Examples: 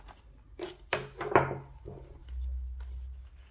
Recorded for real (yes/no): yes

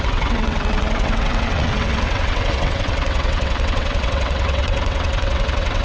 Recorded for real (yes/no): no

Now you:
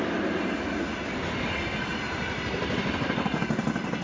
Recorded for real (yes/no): yes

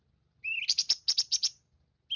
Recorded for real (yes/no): yes